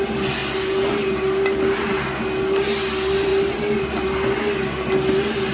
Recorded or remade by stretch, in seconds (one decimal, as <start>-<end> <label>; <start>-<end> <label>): 0.0-5.5 recorded